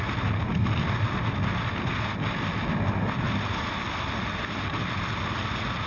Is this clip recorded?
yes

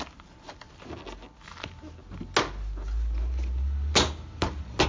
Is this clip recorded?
yes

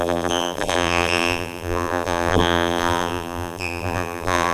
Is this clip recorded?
no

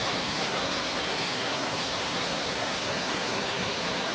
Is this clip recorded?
no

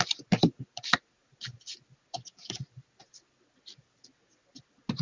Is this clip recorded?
yes